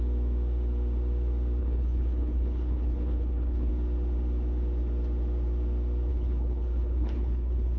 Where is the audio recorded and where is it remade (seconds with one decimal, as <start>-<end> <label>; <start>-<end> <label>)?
0.0-1.6 recorded; 1.6-3.7 remade; 3.7-6.1 recorded; 6.1-7.8 remade

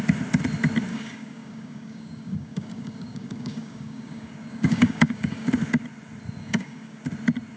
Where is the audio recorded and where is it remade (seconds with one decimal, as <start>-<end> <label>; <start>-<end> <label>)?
0.0-0.9 recorded; 0.9-5.5 remade; 5.5-6.4 recorded; 6.4-7.0 remade; 7.0-7.6 recorded

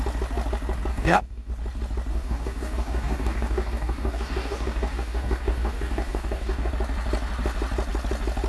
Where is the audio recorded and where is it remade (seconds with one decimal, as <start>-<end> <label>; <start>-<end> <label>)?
0.0-0.9 recorded; 0.9-1.5 remade; 1.5-2.1 recorded; 2.1-6.7 remade; 6.7-8.5 recorded

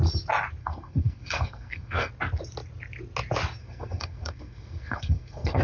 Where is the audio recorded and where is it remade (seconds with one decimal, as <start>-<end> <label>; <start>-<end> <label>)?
0.0-0.6 recorded; 0.6-2.1 remade; 2.1-3.6 recorded; 3.6-5.6 remade